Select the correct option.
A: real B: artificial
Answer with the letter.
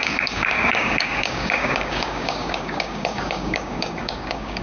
B